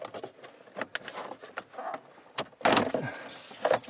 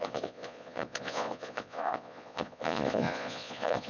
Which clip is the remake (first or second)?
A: second